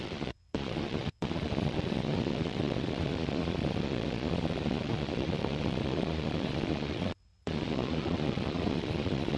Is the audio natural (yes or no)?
no